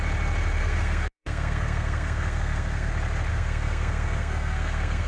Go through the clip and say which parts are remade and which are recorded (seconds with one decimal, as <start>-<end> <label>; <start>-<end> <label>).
0.0-0.6 recorded; 0.6-2.9 remade; 2.9-3.3 recorded; 3.3-5.1 remade